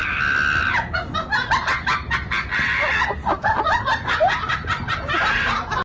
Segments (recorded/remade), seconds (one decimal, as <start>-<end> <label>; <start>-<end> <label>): 0.0-5.8 recorded